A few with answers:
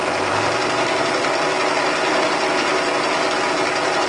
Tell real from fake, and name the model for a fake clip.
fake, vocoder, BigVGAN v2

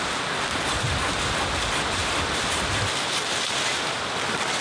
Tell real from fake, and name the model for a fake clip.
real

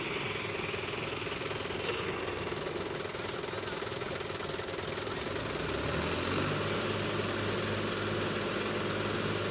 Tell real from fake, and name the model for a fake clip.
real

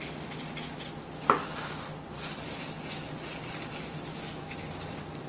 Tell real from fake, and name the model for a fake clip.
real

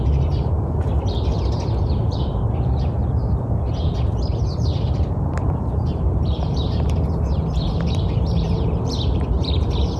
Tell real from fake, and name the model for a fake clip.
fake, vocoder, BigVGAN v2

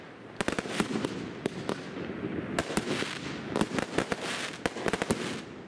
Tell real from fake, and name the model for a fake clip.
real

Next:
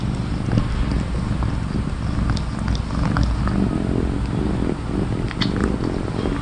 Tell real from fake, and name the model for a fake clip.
real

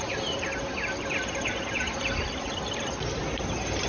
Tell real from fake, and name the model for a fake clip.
real